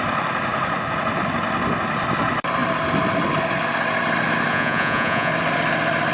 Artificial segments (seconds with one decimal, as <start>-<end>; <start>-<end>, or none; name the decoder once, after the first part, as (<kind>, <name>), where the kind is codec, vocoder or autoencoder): 4.5-5.3 (vocoder, Vocos)